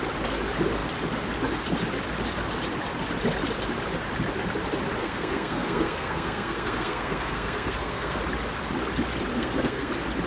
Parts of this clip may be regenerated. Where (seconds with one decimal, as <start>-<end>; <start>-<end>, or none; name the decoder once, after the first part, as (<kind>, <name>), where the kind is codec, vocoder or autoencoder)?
5.0-8.2 (codec, SNAC); 9.3-9.9